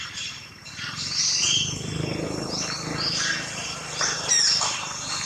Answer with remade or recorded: recorded